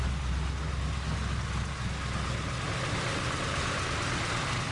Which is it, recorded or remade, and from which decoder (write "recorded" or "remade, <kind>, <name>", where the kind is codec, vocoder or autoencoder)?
recorded